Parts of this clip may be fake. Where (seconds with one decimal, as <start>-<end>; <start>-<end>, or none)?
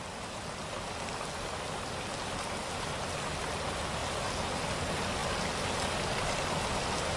none